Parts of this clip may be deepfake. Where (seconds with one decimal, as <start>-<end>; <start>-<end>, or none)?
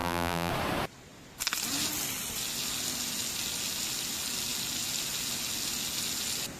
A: 0.0-0.5